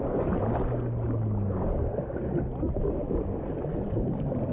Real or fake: real